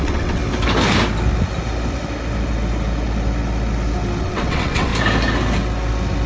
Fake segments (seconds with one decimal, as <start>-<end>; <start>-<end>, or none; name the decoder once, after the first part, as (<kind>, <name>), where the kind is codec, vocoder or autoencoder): 0.0-0.4 (vocoder, WaveNeXt); 4.2-4.9